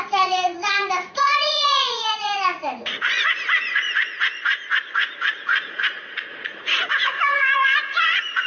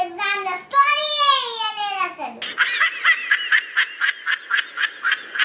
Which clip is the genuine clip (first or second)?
second